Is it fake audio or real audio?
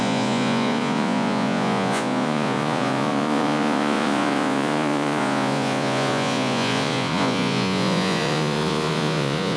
fake